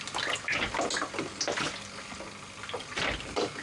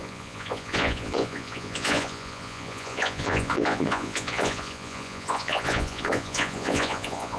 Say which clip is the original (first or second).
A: first